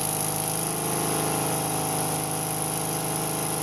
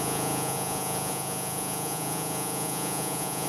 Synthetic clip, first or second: second